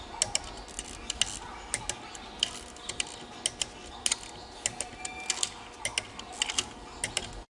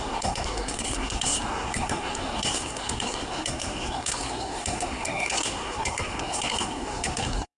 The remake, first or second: second